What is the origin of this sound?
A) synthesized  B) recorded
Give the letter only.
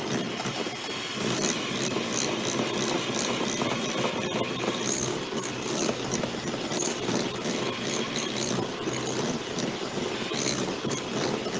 B